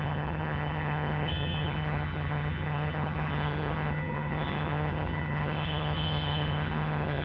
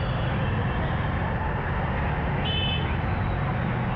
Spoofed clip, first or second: first